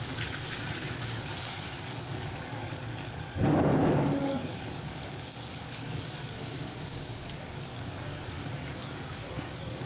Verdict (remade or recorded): remade